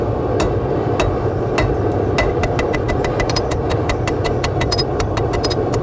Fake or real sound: real